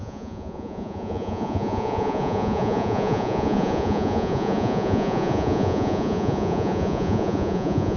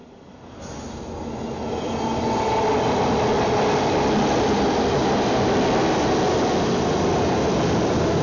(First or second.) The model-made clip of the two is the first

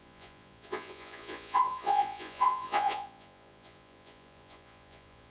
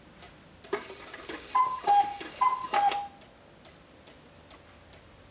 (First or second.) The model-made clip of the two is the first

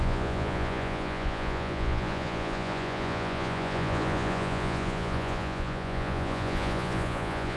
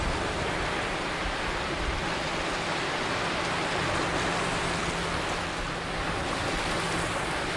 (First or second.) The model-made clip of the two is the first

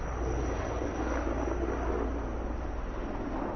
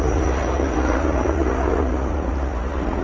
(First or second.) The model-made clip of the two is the second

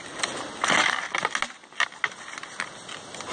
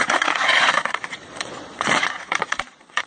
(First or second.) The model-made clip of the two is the second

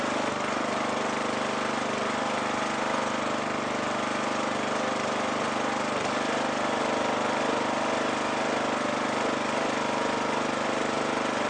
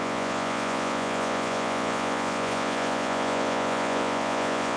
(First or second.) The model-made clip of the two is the second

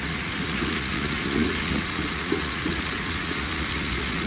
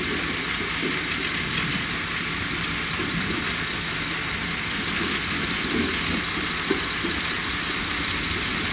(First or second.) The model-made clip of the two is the first